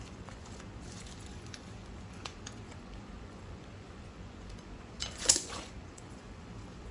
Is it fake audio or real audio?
fake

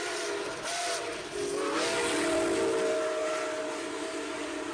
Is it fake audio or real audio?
real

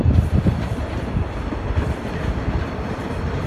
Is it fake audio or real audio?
fake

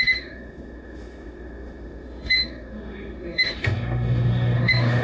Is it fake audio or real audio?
fake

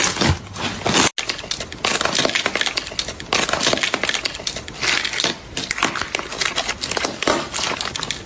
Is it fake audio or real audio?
real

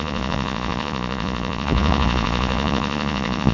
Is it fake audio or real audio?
fake